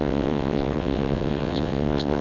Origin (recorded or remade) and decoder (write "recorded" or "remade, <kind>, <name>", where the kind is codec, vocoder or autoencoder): remade, vocoder, WaveNeXt